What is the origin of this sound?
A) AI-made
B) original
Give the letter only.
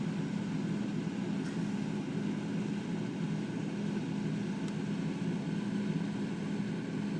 B